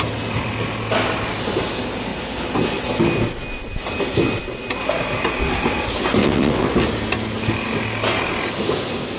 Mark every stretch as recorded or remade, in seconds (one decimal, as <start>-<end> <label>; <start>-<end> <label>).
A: 0.0-6.2 recorded; 6.2-6.7 remade; 6.7-9.2 recorded